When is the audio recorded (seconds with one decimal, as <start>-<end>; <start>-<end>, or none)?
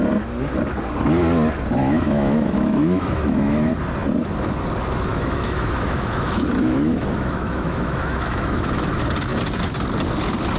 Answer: 0.0-1.8; 3.7-5.1; 8.9-10.6